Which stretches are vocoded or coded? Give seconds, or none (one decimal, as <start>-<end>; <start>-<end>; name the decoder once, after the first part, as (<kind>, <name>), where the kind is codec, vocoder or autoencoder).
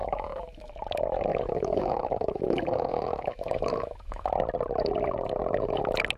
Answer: 0.0-0.7 (autoencoder, DAC-VAE); 1.3-4.3